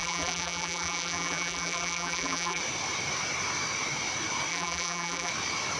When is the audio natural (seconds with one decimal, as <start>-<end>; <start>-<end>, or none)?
2.6-4.5; 5.3-5.8